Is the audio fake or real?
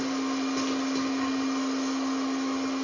real